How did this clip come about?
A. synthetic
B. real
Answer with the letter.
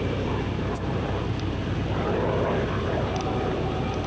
A